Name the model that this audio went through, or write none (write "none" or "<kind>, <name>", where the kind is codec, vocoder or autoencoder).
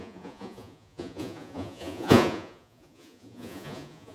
vocoder, Vocos